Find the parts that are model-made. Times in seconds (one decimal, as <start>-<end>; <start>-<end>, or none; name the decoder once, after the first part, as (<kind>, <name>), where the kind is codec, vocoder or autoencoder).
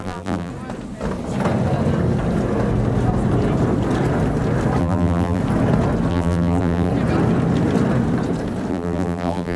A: 0.0-0.5 (vocoder, BigVGAN v2); 4.8-5.4; 6.1-6.9; 8.7-9.6